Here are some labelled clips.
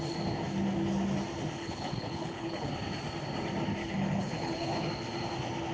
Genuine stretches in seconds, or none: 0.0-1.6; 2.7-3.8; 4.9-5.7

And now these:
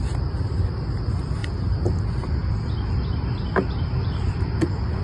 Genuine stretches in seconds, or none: 0.0-5.0